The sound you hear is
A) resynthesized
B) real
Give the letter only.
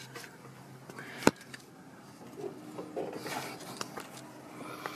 B